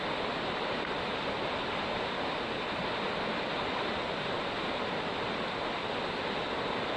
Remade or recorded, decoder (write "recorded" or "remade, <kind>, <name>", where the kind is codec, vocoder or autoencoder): recorded